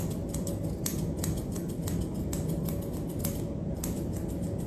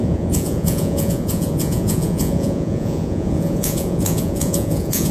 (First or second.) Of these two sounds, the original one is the first